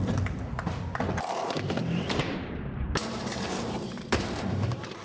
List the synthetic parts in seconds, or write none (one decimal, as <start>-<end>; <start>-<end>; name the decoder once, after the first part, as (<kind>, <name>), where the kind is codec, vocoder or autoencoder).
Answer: 1.8-5.0 (vocoder, BigVGAN v2)